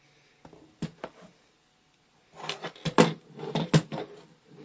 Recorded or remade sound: recorded